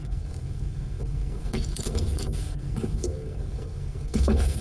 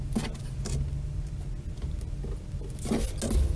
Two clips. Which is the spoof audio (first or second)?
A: first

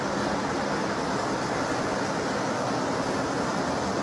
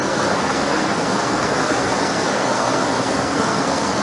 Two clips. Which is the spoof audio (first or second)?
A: second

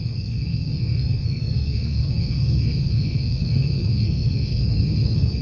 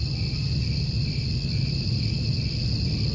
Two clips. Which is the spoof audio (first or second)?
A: first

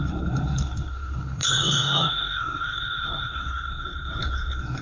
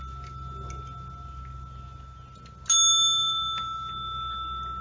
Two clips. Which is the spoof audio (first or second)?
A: first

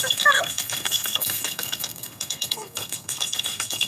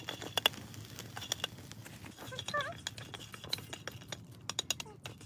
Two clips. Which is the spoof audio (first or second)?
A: first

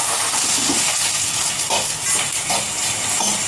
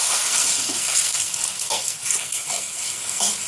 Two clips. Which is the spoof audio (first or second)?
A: second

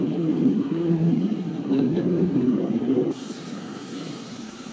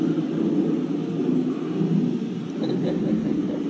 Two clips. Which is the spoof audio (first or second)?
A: first